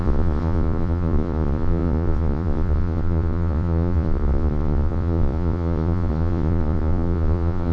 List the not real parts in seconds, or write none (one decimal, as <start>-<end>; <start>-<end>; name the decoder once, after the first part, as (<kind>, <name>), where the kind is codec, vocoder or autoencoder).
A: 0.0-7.7 (vocoder, Vocos)